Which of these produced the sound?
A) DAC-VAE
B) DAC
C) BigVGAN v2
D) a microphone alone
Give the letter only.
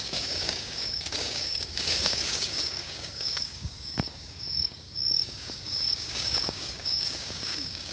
B